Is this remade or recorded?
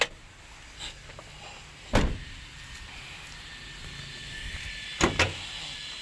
recorded